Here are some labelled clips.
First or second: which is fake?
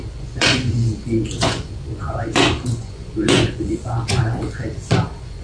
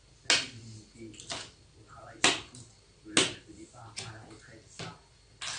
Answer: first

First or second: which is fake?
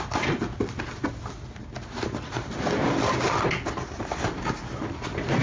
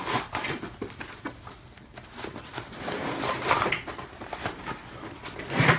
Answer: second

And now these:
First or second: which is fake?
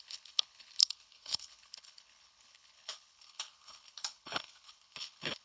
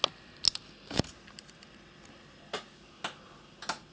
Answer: first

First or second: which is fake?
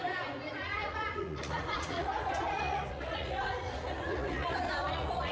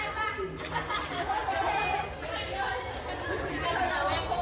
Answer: first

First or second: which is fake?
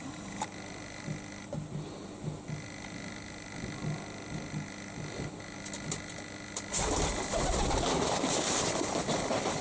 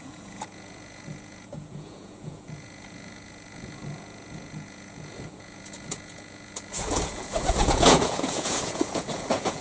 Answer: second